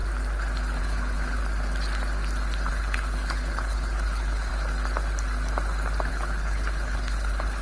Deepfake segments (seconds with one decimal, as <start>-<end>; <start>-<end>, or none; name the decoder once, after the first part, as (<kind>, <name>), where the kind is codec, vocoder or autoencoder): 0.8-1.4 (codec, HILCodec); 2.7-4.5; 6.1-7.6